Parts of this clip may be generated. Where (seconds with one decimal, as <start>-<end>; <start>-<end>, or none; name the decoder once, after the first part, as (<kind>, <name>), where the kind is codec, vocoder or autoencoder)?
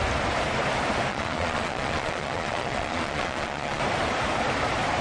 1.1-3.8 (vocoder, Vocos)